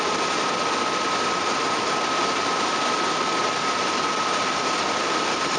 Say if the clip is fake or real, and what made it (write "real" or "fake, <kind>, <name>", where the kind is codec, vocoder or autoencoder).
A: real